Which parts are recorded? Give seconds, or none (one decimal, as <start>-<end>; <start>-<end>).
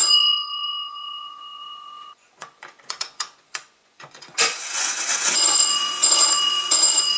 none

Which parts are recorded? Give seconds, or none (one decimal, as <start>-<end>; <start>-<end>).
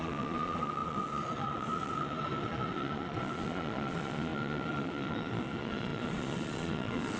none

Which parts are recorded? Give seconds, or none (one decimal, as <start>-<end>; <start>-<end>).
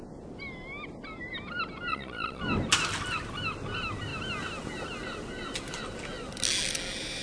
0.0-1.9; 2.4-7.2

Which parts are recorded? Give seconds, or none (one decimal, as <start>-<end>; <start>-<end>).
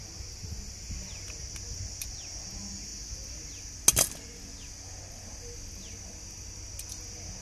0.0-7.4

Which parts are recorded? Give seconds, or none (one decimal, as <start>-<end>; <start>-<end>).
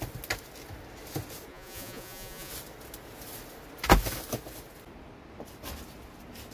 0.0-1.5; 2.5-6.5